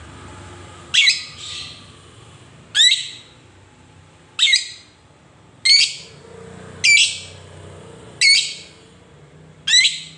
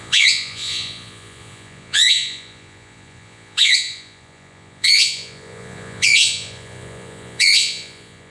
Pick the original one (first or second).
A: first